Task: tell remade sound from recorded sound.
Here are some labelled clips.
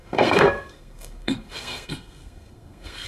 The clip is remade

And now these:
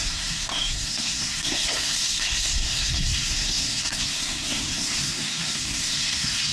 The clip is remade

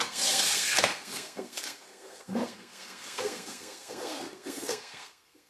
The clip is remade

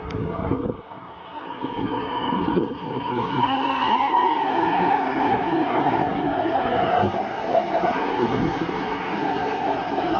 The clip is remade